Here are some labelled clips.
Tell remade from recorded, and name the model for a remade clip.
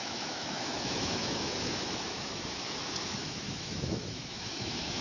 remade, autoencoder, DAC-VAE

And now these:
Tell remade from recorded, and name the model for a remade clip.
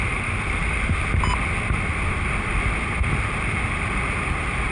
recorded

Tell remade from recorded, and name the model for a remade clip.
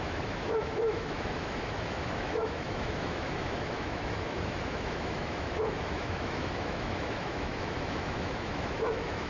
remade, autoencoder, DAC-VAE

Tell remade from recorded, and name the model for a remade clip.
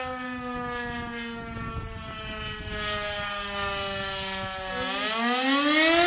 recorded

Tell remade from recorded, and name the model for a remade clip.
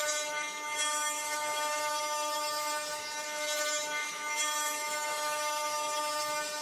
remade, autoencoder, DAC-VAE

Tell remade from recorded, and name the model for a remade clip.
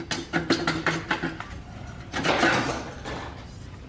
recorded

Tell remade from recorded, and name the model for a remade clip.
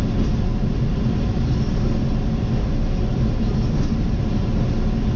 recorded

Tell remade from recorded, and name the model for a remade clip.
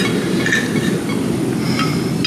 recorded